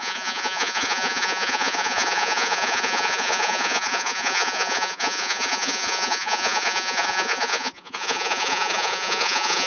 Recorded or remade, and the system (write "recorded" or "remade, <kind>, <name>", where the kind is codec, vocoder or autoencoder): remade, vocoder, Vocos